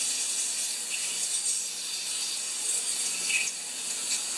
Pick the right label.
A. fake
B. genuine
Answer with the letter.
B